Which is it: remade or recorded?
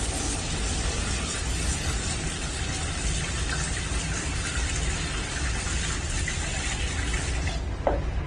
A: recorded